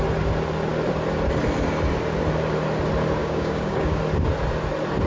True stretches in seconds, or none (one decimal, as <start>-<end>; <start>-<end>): 0.0-3.2; 4.0-5.1